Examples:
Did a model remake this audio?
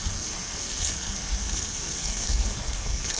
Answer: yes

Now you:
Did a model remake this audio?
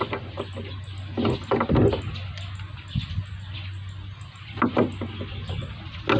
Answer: no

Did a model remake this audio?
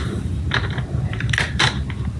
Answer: no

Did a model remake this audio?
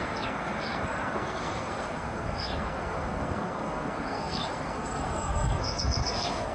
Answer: yes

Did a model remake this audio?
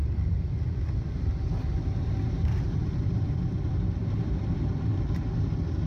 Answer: no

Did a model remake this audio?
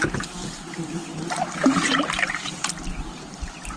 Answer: yes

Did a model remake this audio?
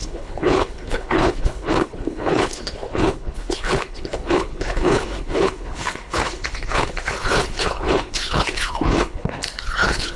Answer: yes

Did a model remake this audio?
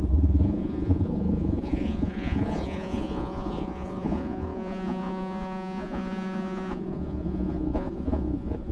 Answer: yes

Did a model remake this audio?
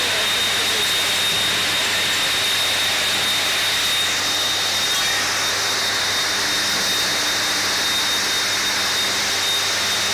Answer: no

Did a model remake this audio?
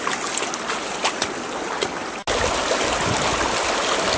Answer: no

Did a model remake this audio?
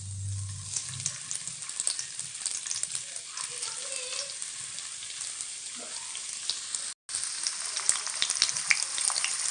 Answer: no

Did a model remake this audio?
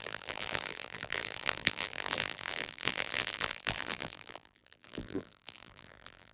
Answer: yes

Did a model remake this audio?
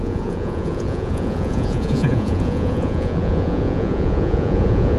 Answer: yes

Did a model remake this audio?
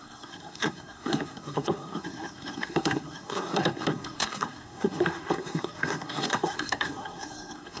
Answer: yes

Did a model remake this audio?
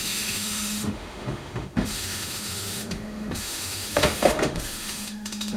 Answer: yes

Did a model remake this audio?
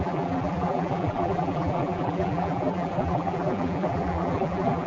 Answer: yes